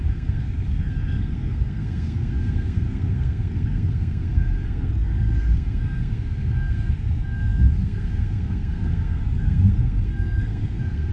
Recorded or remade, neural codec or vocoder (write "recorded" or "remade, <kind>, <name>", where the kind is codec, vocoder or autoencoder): remade, codec, SNAC